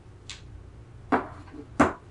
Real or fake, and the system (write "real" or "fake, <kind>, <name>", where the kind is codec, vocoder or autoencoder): real